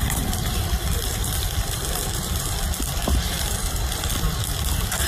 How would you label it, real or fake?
fake